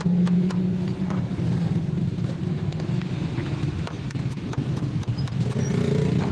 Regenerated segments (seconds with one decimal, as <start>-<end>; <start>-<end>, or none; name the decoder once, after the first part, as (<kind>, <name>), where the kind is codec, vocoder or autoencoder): 3.4-5.1 (autoencoder, DAC-VAE)